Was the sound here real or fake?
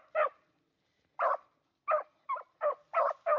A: real